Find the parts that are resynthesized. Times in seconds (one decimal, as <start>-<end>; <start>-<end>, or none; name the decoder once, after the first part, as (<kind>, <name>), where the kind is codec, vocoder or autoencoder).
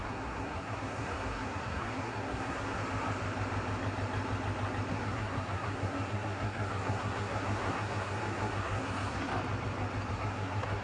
0.0-2.8 (codec, SNAC); 4.9-9.3; 10.1-10.8